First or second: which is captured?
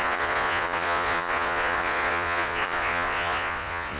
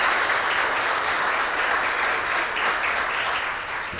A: second